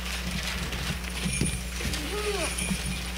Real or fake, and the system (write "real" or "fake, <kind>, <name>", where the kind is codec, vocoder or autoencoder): real